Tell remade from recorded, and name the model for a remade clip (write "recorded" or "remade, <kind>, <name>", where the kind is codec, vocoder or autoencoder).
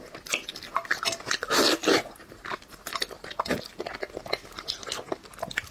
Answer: recorded